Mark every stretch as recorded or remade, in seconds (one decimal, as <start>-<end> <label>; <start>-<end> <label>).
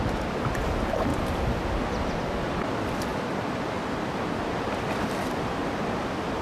0.0-3.1 remade; 3.1-4.5 recorded; 4.5-6.4 remade